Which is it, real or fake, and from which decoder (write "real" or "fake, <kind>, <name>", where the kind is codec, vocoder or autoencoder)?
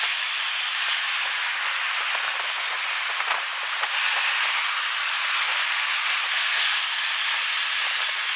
real